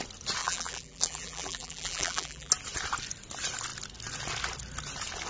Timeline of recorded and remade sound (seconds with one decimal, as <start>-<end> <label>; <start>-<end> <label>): 0.0-0.4 recorded; 0.4-2.5 remade; 2.5-5.3 recorded